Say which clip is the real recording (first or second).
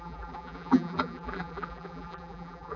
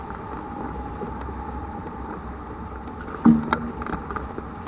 second